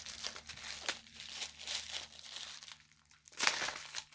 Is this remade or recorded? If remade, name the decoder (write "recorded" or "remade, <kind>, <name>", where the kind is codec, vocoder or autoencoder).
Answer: recorded